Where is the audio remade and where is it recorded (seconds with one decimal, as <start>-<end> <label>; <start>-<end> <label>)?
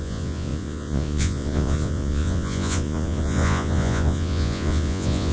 0.0-5.3 remade